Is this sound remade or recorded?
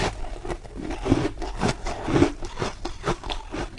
recorded